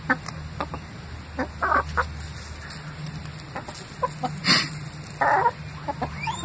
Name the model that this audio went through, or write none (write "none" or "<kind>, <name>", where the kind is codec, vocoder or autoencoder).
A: none